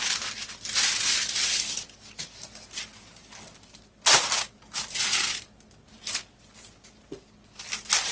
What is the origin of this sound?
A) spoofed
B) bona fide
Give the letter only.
A